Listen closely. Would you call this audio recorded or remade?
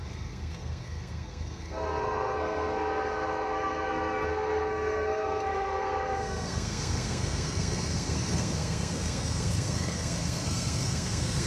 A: remade